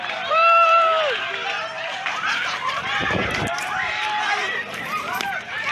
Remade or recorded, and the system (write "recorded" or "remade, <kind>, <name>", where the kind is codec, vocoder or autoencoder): remade, vocoder, BigVGAN v2